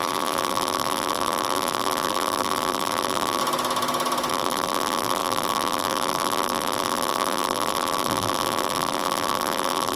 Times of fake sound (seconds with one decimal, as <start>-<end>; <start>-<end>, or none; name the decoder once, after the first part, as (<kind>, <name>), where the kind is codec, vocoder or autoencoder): 0.0-3.4 (vocoder, BigVGAN v2); 4.3-10.0

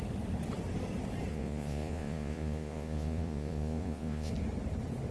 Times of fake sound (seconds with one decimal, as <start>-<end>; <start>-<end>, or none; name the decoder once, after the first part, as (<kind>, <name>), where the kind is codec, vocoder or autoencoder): 1.3-4.3 (vocoder, Vocos)

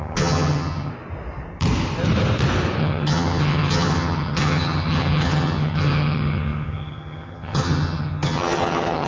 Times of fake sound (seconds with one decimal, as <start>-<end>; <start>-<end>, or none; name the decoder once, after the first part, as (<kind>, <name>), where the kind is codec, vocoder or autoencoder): 0.0-0.9 (vocoder, HiFi-GAN); 2.8-9.1

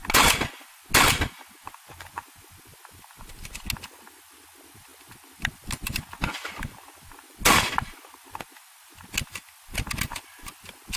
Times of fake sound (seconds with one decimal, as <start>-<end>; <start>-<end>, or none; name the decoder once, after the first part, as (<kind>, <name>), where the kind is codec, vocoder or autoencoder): none

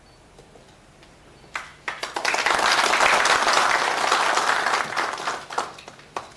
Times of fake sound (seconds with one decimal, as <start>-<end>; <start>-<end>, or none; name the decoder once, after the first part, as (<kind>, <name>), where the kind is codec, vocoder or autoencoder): none

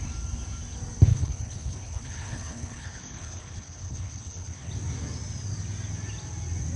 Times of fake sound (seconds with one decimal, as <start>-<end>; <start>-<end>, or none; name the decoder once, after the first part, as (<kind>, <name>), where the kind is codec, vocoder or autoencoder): 1.1-4.7 (codec, HILCodec)

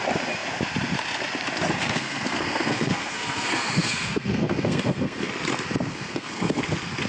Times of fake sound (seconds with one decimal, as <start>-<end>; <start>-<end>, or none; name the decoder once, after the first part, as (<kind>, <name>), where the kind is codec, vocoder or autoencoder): 1.8-5.3 (codec, SNAC); 5.9-6.6

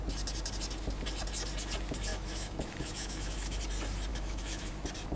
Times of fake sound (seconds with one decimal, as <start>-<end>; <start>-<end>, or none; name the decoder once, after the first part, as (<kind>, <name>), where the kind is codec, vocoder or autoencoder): 2.1-3.6 (autoencoder, DAC-VAE); 4.1-4.7